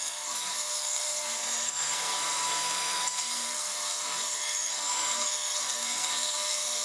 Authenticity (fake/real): fake